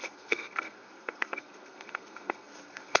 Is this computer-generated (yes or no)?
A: yes